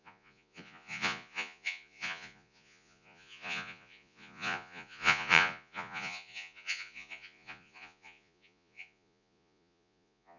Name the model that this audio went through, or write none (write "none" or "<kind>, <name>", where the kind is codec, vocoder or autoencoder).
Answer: vocoder, Vocos